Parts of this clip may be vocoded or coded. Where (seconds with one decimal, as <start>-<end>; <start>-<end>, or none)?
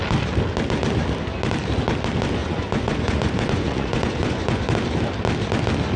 2.4-4.6